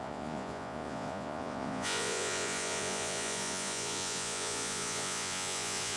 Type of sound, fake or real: fake